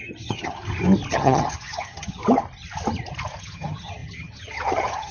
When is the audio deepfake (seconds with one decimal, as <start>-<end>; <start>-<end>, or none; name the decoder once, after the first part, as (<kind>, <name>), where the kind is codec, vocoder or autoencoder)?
0.0-0.6 (vocoder, HiFi-GAN); 1.1-2.2; 3.4-5.1